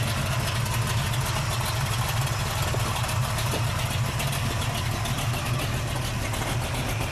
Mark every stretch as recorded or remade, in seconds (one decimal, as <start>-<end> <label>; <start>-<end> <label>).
0.0-2.4 recorded; 2.4-3.8 remade; 3.8-7.1 recorded